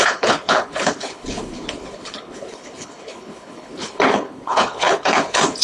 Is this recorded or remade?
remade